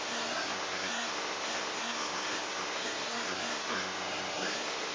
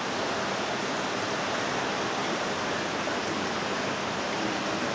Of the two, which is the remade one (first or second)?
first